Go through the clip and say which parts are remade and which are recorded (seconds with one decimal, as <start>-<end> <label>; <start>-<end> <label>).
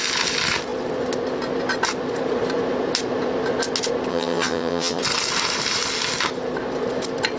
0.0-4.1 recorded; 4.1-5.0 remade; 5.0-7.4 recorded